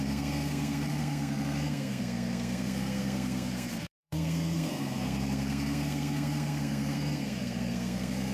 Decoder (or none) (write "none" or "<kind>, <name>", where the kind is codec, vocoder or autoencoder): codec, SNAC